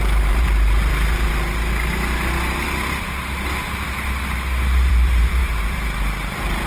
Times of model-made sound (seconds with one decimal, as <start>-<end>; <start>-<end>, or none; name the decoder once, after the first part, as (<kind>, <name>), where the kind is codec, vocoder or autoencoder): 0.0-0.9 (vocoder, BigVGAN v2); 4.9-6.7